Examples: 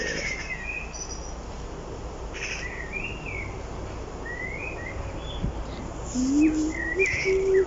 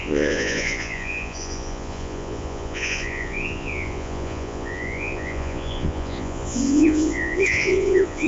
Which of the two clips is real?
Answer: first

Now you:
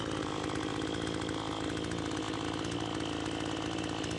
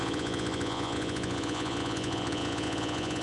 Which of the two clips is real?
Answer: first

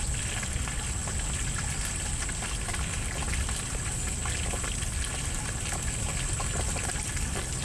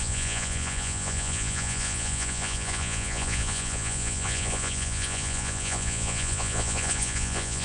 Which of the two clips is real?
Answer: first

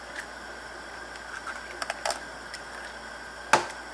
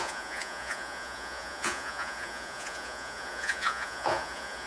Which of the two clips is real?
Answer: first